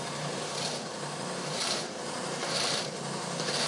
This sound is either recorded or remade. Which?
remade